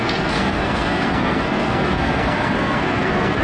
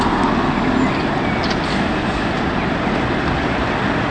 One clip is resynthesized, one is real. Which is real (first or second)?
second